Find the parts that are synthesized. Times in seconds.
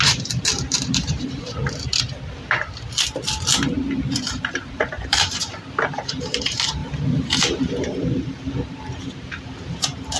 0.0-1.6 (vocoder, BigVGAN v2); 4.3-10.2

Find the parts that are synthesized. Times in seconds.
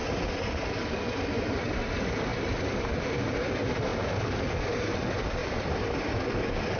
1.3-6.8 (vocoder, BigVGAN v2)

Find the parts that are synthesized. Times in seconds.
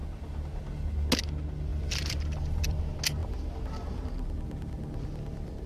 1.7-2.8 (vocoder, BigVGAN v2)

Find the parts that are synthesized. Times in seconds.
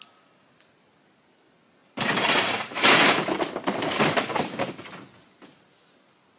1.8-5.6 (vocoder, BigVGAN v2)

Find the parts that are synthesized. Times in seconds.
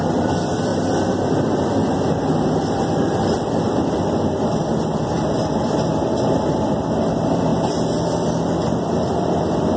0.0-0.7 (vocoder, BigVGAN v2); 1.3-7.5; 8.4-9.8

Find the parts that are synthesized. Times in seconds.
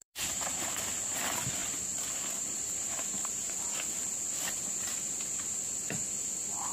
0.0-0.7 (vocoder, BigVGAN v2); 1.6-3.3